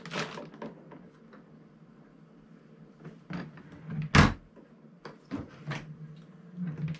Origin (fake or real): real